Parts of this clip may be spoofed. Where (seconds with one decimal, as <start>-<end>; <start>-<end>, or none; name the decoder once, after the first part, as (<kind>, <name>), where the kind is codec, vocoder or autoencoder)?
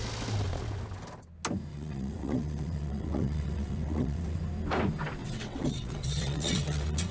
1.7-4.4 (vocoder, WaveNeXt); 5.2-7.1